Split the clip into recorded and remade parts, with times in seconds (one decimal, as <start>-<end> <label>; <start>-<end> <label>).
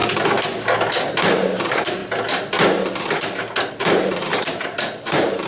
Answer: 0.0-1.1 recorded; 1.1-2.0 remade; 2.0-3.7 recorded; 3.7-5.5 remade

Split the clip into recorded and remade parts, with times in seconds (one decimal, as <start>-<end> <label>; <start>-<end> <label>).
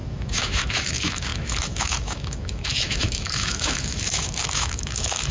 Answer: 0.0-5.3 remade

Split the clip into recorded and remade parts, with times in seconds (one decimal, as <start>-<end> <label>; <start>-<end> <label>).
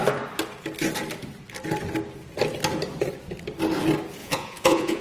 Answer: 0.0-4.2 recorded; 4.2-5.0 remade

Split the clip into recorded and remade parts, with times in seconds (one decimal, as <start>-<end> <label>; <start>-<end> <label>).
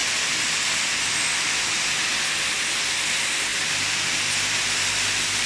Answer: 0.0-5.5 recorded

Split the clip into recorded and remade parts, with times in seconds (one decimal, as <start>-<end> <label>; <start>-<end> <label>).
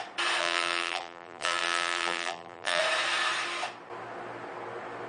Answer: 0.0-0.4 recorded; 0.4-2.8 remade; 2.8-5.1 recorded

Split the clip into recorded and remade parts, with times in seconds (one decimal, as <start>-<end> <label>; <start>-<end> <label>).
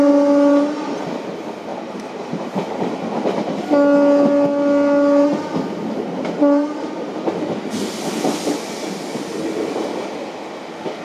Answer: 0.0-1.7 recorded; 1.7-3.0 remade; 3.0-11.0 recorded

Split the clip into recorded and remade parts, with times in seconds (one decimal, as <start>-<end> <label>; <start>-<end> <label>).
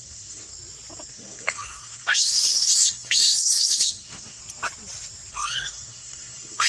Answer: 0.0-0.5 remade; 0.5-1.1 recorded; 1.1-4.4 remade; 4.4-5.3 recorded; 5.3-6.7 remade